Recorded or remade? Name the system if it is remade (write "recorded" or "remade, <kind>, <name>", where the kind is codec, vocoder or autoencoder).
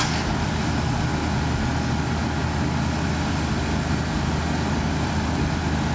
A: recorded